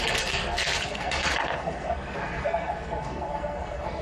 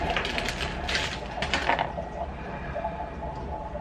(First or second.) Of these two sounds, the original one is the second